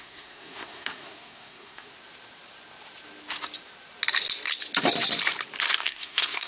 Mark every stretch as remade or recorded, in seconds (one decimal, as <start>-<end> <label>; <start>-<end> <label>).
0.0-1.9 remade; 1.9-5.8 recorded; 5.8-6.5 remade

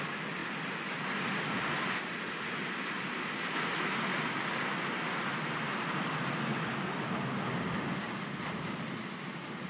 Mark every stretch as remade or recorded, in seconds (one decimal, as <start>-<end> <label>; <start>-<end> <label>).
0.0-9.7 recorded

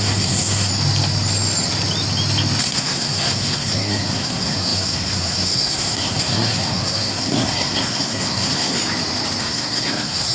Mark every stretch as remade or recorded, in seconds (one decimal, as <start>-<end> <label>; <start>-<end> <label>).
0.0-0.7 remade; 0.7-2.6 recorded; 2.6-8.8 remade; 8.8-9.4 recorded; 9.4-10.3 remade

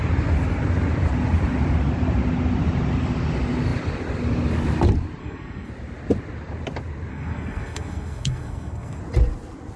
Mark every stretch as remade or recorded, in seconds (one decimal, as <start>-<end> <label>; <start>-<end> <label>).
0.0-5.2 recorded; 5.2-5.7 remade; 5.7-7.1 recorded; 7.1-9.0 remade; 9.0-9.8 recorded

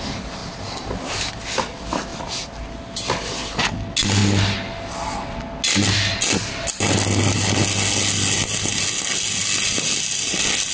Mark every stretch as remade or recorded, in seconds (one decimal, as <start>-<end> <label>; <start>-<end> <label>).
0.0-10.7 recorded